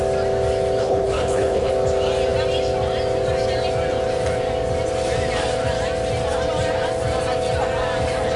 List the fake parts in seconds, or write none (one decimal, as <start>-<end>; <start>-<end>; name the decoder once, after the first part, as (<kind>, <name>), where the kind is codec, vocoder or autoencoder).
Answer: 0.8-1.7 (codec, HILCodec)